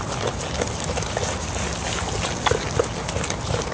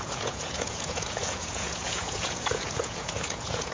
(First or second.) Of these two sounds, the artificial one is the second